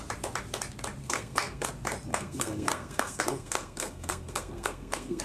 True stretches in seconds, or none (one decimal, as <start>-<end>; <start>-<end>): 0.0-1.0; 1.7-2.1